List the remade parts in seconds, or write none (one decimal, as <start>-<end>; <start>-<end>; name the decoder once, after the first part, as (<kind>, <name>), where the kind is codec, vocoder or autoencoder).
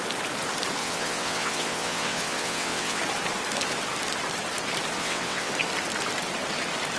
0.8-3.0 (vocoder, WaveNeXt); 5.0-5.5